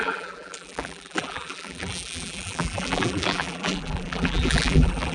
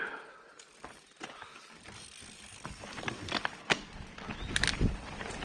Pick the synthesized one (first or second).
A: first